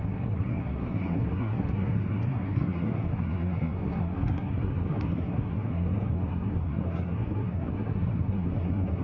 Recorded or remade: remade